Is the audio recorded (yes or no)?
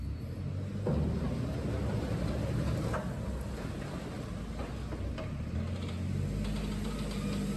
yes